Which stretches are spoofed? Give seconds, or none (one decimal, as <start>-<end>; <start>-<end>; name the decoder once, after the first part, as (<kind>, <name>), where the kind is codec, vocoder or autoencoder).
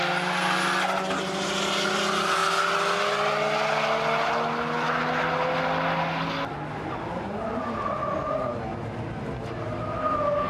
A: none